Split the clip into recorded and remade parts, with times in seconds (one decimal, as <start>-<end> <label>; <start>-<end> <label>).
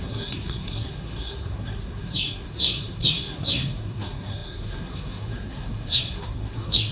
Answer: 0.0-6.9 remade